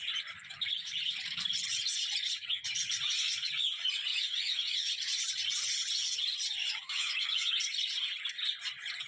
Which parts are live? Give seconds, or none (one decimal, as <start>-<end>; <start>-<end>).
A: 0.0-4.1; 4.9-6.6; 7.6-9.1